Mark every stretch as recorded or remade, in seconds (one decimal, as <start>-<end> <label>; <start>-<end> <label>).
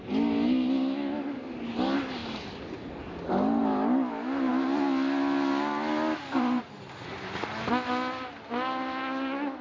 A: 0.0-9.6 recorded